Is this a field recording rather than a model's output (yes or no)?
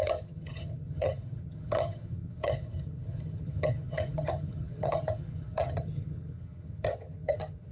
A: no